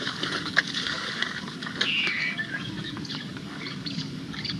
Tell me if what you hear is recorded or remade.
remade